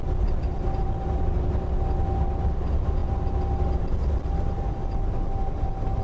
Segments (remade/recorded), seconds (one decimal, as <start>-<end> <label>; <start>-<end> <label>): 0.0-6.0 recorded